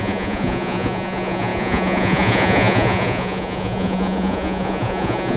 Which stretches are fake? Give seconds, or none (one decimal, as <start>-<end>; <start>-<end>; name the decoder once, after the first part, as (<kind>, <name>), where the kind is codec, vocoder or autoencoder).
0.0-5.4 (vocoder, Vocos)